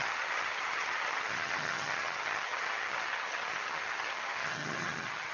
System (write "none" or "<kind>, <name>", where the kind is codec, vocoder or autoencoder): vocoder, HiFi-GAN